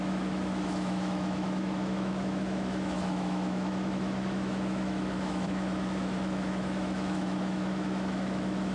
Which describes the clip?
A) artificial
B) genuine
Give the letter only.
A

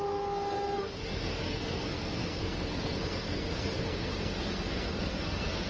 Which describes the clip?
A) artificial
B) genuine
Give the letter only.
A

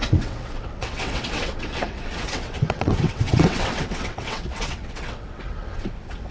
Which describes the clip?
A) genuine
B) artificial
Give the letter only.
B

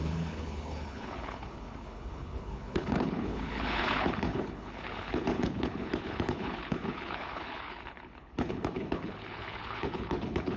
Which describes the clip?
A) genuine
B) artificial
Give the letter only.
B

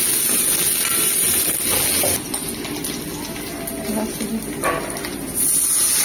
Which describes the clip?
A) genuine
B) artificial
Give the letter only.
A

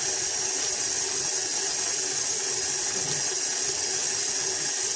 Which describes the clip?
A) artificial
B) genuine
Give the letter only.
B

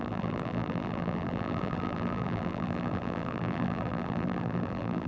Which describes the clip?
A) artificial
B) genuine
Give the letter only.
A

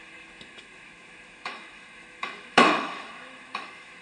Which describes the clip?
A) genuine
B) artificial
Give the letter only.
B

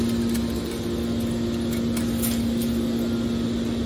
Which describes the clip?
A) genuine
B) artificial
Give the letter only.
A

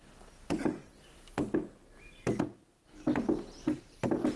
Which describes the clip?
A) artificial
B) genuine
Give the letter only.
B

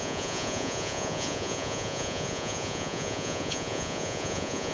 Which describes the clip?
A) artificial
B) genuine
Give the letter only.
A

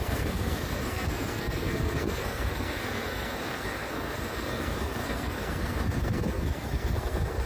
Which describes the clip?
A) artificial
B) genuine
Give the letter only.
A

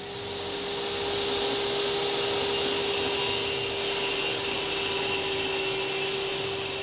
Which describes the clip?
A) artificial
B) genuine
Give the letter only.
B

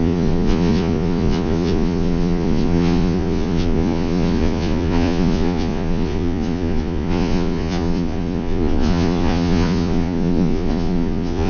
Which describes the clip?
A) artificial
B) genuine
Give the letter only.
A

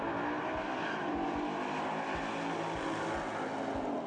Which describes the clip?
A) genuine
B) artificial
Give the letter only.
A